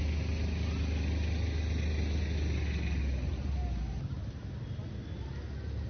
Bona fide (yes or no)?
yes